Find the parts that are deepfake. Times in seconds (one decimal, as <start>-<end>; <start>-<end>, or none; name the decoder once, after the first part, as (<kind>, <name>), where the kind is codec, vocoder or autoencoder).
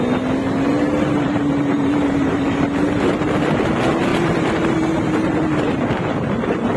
0.4-3.6 (vocoder, BigVGAN v2); 4.1-6.8